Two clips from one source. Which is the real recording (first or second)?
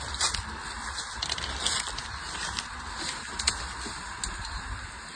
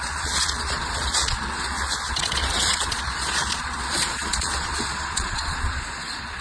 first